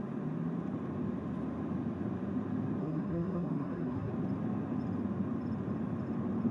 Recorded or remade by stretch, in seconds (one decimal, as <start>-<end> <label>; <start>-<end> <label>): 0.0-2.8 recorded; 2.8-4.1 remade; 4.1-6.5 recorded